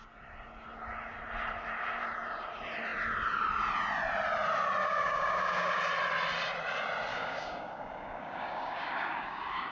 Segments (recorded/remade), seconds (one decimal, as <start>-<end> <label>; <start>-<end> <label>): 0.0-4.8 recorded; 4.8-5.8 remade; 5.8-7.1 recorded; 7.1-9.7 remade